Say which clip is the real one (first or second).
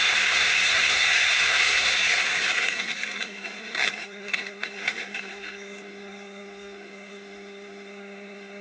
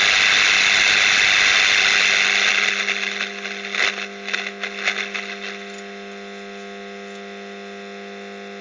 second